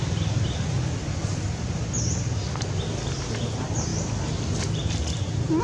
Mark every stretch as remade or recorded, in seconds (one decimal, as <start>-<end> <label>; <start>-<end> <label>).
0.0-5.6 recorded

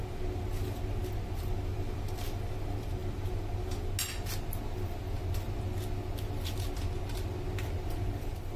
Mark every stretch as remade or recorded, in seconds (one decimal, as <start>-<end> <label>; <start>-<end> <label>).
0.0-8.6 recorded

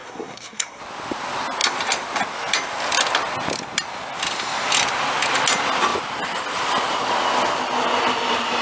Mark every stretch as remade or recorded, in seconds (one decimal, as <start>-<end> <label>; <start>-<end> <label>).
0.0-0.8 remade; 0.8-8.6 recorded

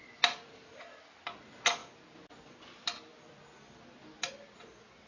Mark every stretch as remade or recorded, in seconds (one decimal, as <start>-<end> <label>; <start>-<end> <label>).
0.0-5.1 recorded

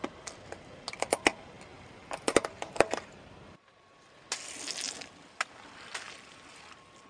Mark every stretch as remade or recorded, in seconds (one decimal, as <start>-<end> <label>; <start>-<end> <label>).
0.0-1.7 recorded; 1.7-4.2 remade; 4.2-7.1 recorded

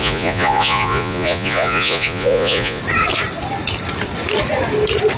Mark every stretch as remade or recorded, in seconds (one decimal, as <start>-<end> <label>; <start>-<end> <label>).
0.0-2.8 remade; 2.8-5.2 recorded

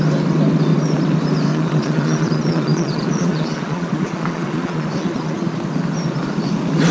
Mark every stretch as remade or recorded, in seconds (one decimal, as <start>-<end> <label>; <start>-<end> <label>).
0.0-1.5 recorded; 1.5-5.6 remade; 5.6-6.9 recorded

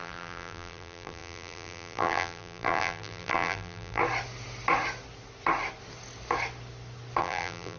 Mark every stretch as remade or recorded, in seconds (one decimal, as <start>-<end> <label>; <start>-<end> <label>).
0.0-4.0 remade; 4.0-7.2 recorded; 7.2-7.8 remade